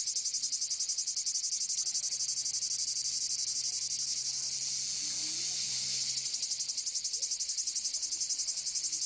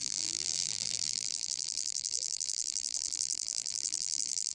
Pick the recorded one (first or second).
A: first